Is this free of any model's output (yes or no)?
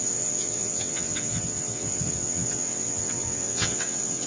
no